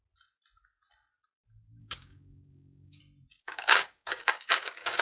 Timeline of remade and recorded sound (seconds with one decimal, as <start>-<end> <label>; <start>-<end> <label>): 0.0-1.8 recorded; 1.8-3.0 remade; 3.0-3.4 recorded; 3.4-5.0 remade